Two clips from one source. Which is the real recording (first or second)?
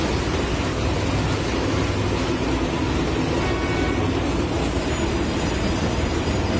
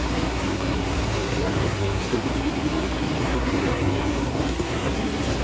first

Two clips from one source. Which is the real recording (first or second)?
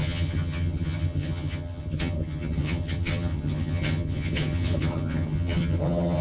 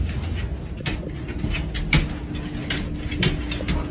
second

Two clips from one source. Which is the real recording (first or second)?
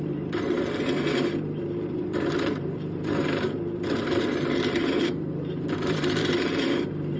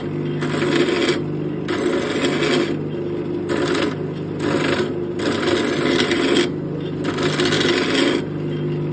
second